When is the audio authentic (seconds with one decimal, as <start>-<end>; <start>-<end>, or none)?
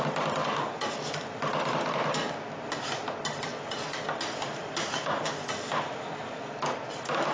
none